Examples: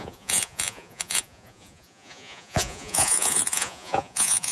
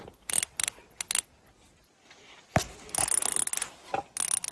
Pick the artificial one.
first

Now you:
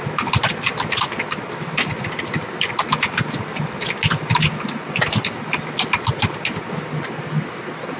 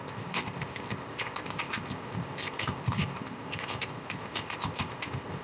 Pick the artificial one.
second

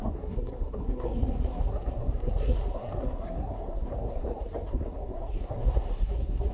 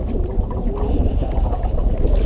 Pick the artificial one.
first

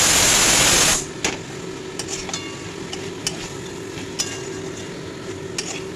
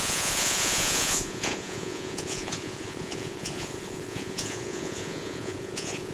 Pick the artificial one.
second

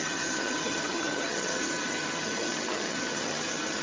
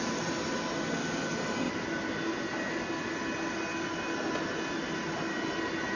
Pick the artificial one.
first